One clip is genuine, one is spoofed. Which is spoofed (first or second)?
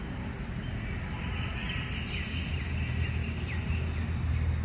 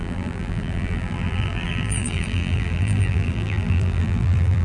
second